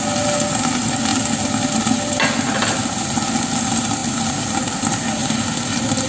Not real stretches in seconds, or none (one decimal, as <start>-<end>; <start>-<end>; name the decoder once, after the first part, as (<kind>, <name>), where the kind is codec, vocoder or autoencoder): none